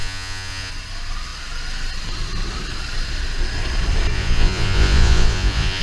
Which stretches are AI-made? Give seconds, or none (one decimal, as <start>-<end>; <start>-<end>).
0.0-0.7; 4.1-5.8